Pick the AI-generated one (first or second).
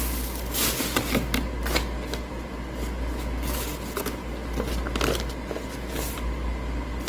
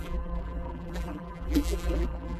second